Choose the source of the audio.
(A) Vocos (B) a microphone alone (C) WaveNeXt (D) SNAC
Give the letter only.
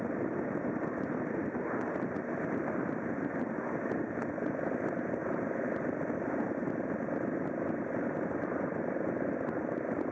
B